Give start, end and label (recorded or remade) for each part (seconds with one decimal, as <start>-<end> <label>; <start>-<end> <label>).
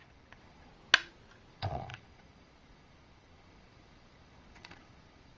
0.0-0.7 remade; 0.7-1.5 recorded; 1.5-5.4 remade